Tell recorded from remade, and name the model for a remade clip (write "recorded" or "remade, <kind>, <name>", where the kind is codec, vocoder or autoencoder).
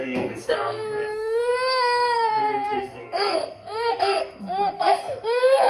remade, codec, SNAC